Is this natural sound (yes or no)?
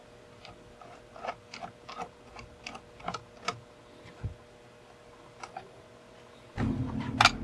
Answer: yes